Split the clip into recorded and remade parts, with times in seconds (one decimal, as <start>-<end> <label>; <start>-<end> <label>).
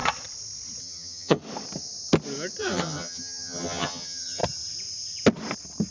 0.0-0.8 recorded; 0.8-1.4 remade; 1.4-2.6 recorded; 2.6-4.4 remade; 4.4-5.9 recorded